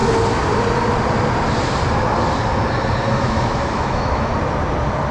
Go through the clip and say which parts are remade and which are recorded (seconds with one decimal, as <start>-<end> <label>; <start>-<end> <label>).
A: 0.0-3.1 recorded; 3.1-4.3 remade; 4.3-5.1 recorded